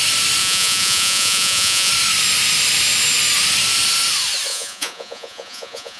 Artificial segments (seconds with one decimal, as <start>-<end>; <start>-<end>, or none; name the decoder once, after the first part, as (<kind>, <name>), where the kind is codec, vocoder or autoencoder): 0.4-1.9 (vocoder, Vocos); 4.5-6.0